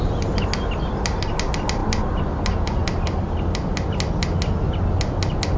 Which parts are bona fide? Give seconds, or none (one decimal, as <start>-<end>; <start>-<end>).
0.0-5.6

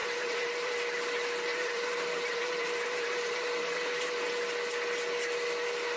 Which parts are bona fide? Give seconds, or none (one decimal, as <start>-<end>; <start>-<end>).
0.7-1.5; 4.4-6.0

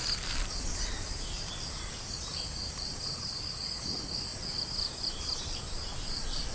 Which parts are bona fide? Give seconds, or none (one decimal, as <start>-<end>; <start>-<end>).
0.0-2.3; 3.4-4.3; 5.6-6.5